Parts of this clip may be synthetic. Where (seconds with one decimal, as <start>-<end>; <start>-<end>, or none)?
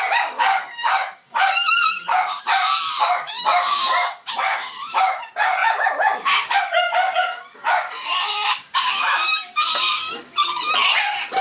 0.0-10.4